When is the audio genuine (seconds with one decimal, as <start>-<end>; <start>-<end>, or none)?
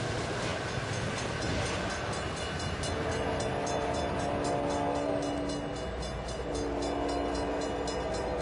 0.0-8.4